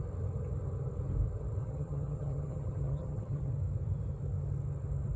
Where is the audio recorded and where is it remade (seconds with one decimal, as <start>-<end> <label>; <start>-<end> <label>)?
0.0-1.6 recorded; 1.6-3.5 remade; 3.5-5.2 recorded